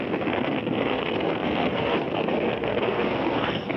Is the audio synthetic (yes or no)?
yes